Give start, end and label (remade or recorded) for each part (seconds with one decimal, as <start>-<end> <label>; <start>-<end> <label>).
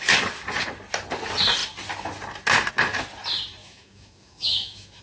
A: 0.0-3.6 recorded; 3.6-5.0 remade